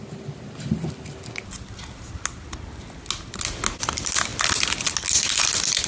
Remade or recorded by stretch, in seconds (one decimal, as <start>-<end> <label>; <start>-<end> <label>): 0.0-5.9 recorded